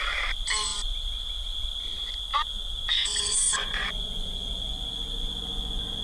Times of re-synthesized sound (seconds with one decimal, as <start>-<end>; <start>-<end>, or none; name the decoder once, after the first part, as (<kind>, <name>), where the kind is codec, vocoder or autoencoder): 2.3-6.0 (vocoder, Vocos)